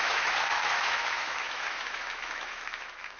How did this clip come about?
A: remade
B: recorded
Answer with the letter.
A